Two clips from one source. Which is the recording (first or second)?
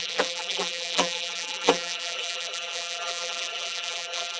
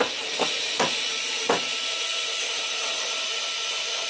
second